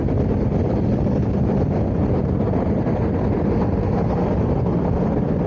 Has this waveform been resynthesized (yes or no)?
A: no